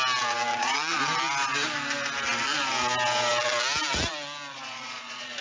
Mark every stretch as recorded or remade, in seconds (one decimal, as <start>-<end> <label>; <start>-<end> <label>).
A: 0.0-0.5 recorded; 0.5-1.0 remade; 1.0-4.5 recorded; 4.5-5.4 remade